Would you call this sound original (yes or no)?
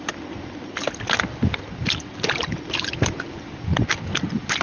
yes